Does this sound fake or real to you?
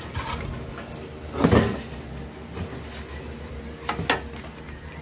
real